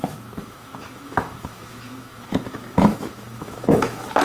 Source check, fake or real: fake